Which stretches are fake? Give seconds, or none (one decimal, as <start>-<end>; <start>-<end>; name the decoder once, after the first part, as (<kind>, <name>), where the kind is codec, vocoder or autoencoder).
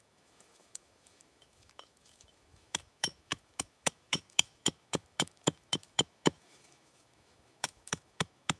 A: 0.0-8.6 (autoencoder, DAC-VAE)